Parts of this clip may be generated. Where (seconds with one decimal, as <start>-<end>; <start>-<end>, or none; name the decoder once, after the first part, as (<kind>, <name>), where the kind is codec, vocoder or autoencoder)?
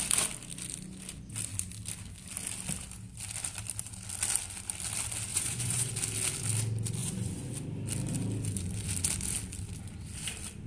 5.3-5.9 (vocoder, Vocos); 7.0-7.5